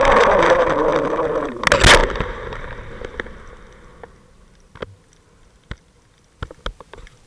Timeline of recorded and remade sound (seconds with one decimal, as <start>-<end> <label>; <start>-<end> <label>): 0.0-7.3 recorded